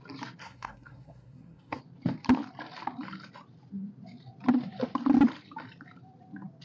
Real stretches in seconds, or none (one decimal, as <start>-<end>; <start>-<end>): 0.0-0.4; 1.8-6.6